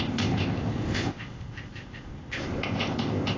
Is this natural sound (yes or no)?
no